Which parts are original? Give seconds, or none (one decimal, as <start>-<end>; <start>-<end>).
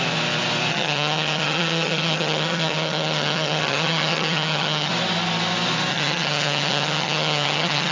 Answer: 0.0-0.7; 4.9-5.9